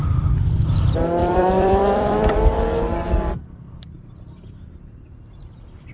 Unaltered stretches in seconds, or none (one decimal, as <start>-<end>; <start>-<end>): 0.0-1.2; 2.5-5.9